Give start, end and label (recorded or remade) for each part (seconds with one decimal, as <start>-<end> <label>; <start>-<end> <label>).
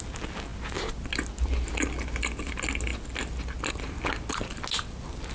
0.0-5.3 recorded